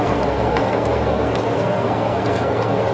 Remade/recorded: remade